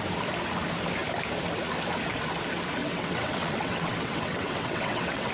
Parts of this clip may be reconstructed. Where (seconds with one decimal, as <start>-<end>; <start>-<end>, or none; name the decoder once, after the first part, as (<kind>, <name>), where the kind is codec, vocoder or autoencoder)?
2.8-5.3 (vocoder, WaveNeXt)